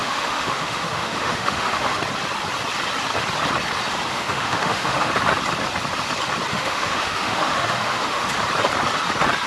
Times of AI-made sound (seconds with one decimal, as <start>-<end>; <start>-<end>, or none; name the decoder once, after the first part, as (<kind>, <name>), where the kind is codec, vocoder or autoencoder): 0.0-2.0 (autoencoder, DAC-VAE); 4.1-5.1; 6.5-8.3